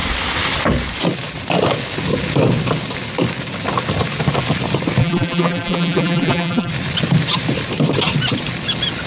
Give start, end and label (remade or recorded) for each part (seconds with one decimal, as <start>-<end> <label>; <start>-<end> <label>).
0.0-5.0 recorded; 5.0-6.7 remade; 6.7-9.1 recorded